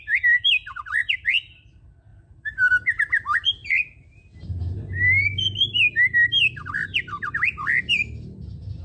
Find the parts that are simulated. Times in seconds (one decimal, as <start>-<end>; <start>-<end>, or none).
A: 3.6-4.2